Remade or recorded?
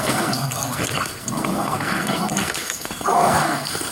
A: remade